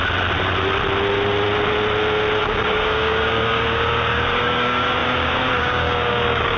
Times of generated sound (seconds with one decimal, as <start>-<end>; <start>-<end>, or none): 2.4-6.6